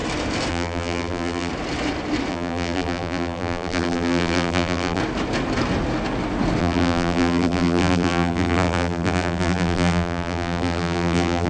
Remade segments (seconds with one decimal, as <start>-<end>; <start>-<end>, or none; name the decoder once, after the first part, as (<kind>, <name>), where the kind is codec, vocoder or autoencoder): 0.5-1.5 (vocoder, BigVGAN v2); 2.3-5.0; 6.6-11.5